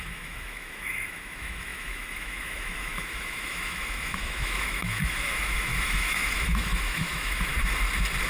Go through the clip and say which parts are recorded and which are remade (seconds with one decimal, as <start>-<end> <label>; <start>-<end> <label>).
0.0-7.5 remade; 7.5-8.3 recorded